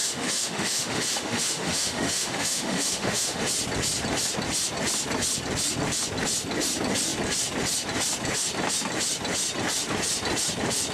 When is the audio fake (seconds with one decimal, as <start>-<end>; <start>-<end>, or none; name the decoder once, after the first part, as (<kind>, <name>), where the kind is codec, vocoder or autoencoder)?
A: 0.0-3.4 (autoencoder, DAC-VAE)